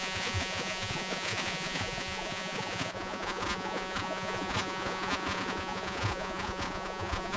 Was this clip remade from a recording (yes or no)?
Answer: yes